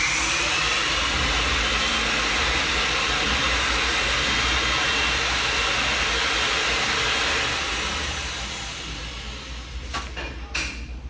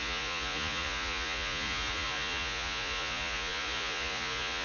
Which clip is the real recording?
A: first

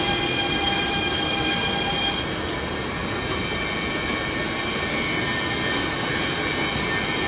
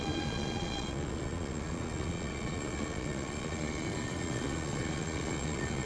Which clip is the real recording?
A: first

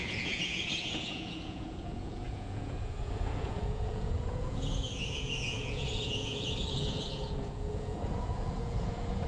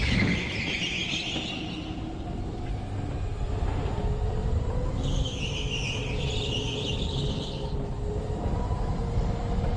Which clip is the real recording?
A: second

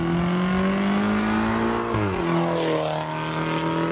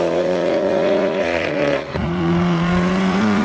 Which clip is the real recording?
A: first